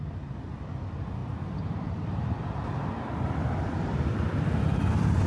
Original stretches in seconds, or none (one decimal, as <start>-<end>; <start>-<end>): none

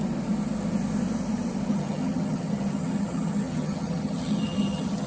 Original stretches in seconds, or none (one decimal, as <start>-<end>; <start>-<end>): 0.0-1.7

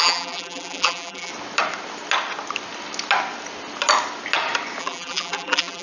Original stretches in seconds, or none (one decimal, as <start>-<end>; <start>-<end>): 1.3-4.8

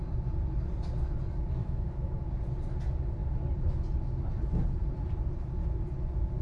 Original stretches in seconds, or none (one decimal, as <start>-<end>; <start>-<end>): 0.0-1.6; 2.1-6.4

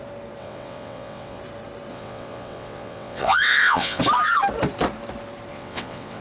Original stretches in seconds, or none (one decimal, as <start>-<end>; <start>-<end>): 0.0-0.4; 1.4-1.9; 4.0-5.5

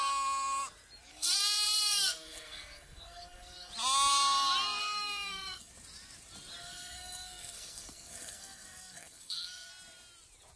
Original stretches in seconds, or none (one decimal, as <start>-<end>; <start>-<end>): 0.0-1.1; 3.7-4.8; 5.7-6.6; 9.7-10.6